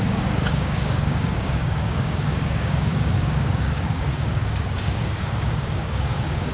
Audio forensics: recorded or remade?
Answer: remade